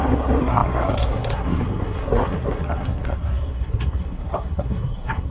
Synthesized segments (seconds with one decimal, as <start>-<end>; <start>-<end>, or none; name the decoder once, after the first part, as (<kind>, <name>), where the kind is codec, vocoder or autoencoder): 0.0-5.3 (codec, SNAC)